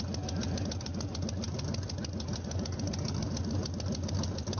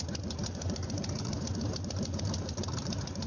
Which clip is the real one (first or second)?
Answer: first